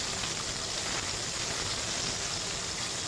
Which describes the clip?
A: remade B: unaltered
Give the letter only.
B